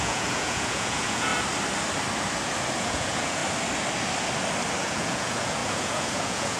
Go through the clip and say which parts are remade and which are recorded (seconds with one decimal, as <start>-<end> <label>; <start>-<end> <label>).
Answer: 0.0-1.3 remade; 1.3-2.8 recorded; 2.8-3.4 remade; 3.4-4.8 recorded; 4.8-6.6 remade